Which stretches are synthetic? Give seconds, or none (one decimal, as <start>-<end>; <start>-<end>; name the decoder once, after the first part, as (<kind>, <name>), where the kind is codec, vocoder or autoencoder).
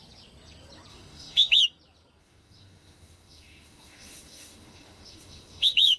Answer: 0.9-1.6 (autoencoder, DAC-VAE); 2.2-6.0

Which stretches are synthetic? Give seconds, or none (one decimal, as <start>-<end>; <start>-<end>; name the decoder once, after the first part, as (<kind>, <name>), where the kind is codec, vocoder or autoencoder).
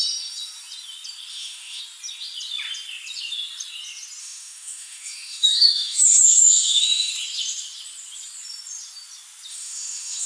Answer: 1.3-1.8 (autoencoder, DAC-VAE); 4.2-7.1; 9.5-10.3